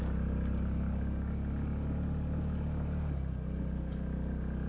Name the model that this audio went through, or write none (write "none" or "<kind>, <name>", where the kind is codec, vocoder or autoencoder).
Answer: none